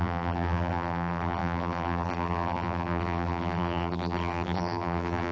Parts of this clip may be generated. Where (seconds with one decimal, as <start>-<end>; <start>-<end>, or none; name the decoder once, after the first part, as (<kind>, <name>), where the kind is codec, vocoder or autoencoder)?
0.0-5.3 (vocoder, BigVGAN v2)